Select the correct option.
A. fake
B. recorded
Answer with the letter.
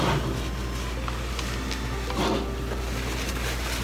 B